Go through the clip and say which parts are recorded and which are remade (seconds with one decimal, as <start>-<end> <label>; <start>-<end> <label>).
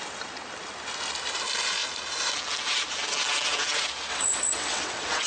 0.0-4.1 recorded; 4.1-5.3 remade